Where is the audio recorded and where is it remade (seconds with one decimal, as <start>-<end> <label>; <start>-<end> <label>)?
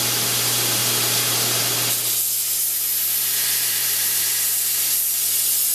0.0-5.7 recorded